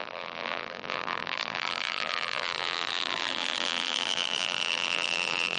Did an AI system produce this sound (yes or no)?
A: yes